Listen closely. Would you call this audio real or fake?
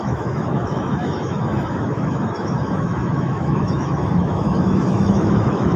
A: fake